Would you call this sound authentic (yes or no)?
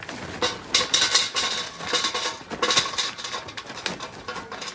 yes